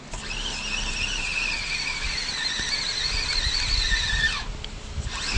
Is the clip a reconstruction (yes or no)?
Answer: no